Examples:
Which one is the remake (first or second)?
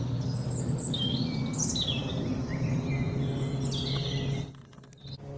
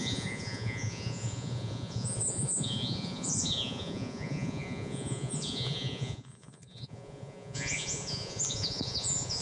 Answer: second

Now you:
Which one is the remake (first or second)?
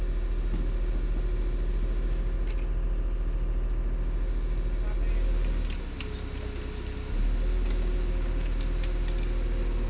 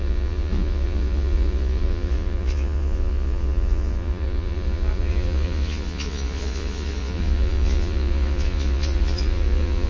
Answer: second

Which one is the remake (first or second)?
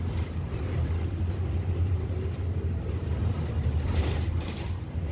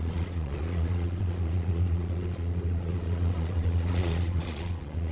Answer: second